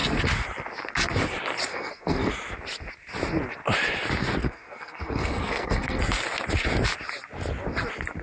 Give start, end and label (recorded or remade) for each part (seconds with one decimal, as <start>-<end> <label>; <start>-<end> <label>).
0.0-1.7 recorded; 1.7-2.3 remade; 2.3-4.4 recorded; 4.4-6.0 remade; 6.0-8.2 recorded